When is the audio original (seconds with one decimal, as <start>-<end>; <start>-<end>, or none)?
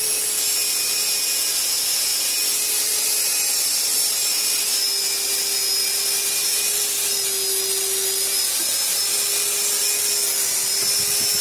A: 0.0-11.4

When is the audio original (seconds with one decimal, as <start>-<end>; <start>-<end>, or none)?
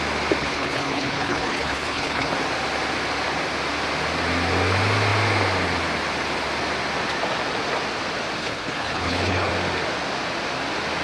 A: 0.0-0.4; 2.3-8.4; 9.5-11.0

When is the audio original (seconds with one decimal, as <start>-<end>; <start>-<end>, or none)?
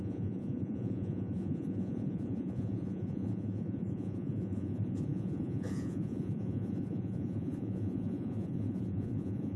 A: none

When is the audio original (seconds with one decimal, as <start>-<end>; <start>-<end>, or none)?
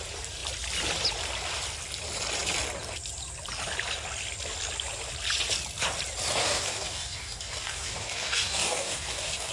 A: 0.0-6.4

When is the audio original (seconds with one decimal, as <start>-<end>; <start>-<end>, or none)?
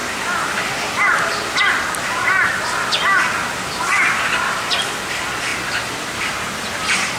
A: 0.0-7.2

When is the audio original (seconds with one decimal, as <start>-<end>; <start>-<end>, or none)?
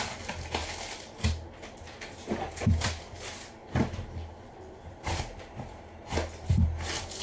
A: 0.0-3.6; 6.0-7.2